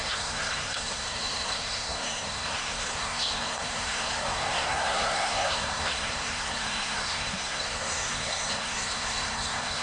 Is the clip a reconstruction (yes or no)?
yes